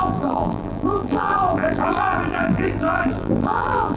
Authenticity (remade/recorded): remade